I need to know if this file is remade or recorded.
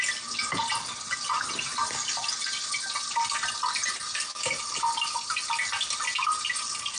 recorded